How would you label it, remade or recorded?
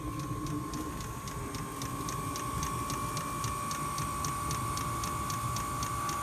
recorded